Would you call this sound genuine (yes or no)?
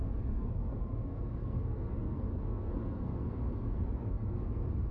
no